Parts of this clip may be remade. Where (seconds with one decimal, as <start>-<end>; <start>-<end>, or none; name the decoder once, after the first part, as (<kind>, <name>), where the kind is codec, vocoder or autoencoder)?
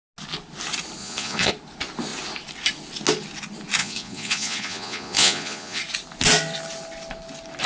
1.0-1.5 (vocoder, Vocos); 3.8-5.8